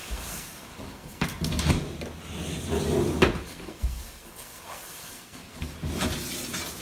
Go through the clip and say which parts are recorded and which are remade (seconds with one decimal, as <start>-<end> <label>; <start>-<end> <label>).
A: 0.0-1.7 remade; 1.7-3.4 recorded; 3.4-5.7 remade; 5.7-6.8 recorded